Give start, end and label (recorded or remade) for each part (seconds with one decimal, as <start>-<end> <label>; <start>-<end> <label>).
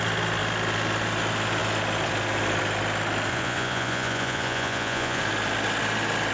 0.0-3.3 recorded; 3.3-5.2 remade; 5.2-6.3 recorded